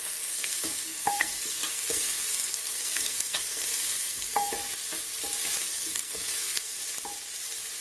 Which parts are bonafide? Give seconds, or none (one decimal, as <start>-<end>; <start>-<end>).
4.5-5.6; 6.8-7.8